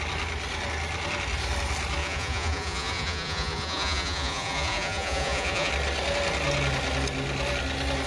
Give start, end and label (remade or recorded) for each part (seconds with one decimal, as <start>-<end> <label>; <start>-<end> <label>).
0.0-2.0 recorded; 2.0-5.7 remade; 5.7-8.1 recorded